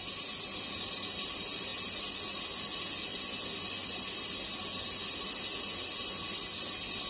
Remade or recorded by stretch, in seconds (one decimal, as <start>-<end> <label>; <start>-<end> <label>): 0.0-7.1 recorded